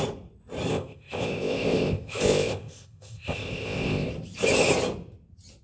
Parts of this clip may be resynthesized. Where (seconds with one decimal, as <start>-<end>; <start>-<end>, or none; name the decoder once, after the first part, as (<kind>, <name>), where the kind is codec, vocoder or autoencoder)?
0.7-4.1 (codec, ZipCodec)

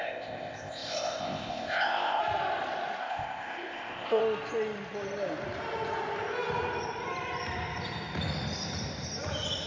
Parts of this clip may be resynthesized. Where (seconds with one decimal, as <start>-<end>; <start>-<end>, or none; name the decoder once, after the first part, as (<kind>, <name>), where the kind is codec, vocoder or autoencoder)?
0.0-2.2 (codec, ZipCodec); 3.0-4.2

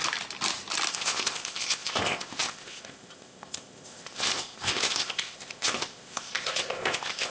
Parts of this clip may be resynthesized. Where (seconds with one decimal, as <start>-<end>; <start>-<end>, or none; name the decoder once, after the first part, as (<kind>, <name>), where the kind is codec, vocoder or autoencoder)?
0.9-7.3 (codec, ZipCodec)